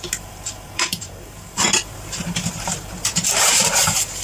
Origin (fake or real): fake